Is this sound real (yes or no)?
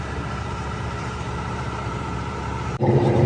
no